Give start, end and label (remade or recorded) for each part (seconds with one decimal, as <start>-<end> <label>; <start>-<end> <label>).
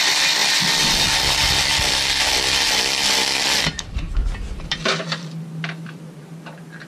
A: 0.0-0.4 remade; 0.4-4.5 recorded; 4.5-6.9 remade